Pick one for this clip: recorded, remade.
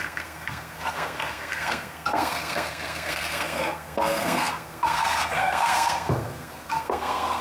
remade